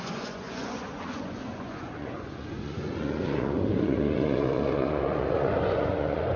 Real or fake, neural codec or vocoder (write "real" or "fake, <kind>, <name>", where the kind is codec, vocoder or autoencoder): fake, vocoder, Vocos